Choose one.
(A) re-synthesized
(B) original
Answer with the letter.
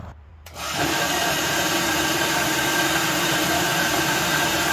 A